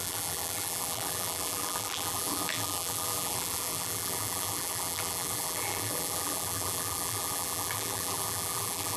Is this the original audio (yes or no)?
no